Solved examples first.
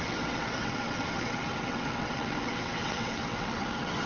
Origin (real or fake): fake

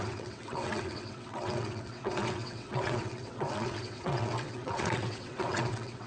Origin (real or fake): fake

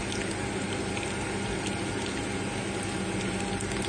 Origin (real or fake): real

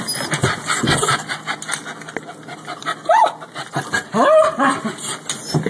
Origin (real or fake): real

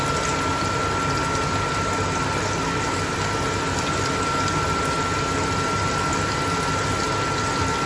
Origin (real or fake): real